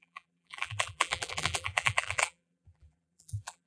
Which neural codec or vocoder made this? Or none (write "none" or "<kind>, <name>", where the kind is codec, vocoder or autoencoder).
vocoder, BigVGAN v2